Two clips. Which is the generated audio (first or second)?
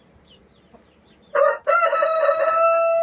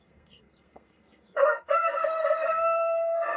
second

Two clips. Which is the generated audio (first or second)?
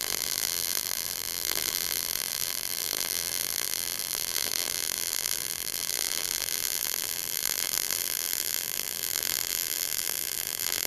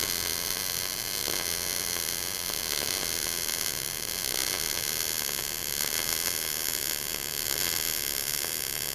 first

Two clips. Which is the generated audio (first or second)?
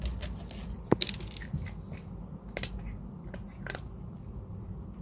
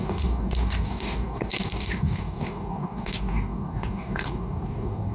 second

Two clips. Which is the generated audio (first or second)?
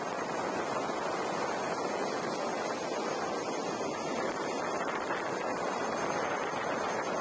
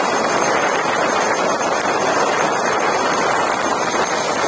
second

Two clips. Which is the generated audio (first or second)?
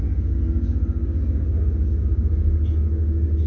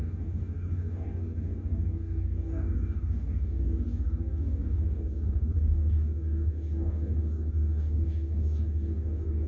second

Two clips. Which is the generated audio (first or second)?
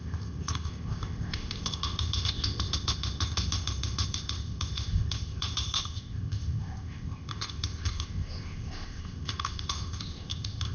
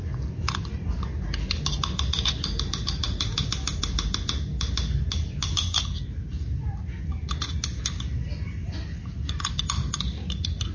first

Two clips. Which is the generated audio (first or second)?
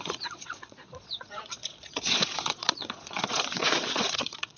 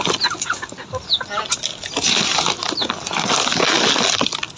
first